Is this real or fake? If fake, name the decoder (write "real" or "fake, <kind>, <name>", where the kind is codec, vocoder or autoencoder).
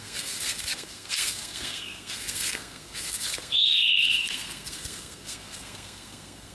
fake, codec, SNAC